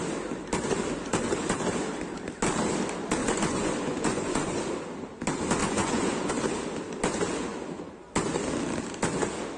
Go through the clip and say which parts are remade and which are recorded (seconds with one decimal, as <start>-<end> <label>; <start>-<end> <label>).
0.0-3.2 recorded; 3.2-4.6 remade; 4.6-5.6 recorded; 5.6-6.3 remade; 6.3-9.6 recorded